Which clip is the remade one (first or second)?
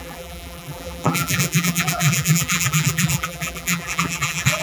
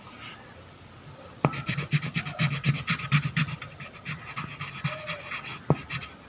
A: first